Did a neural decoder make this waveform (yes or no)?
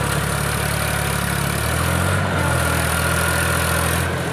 no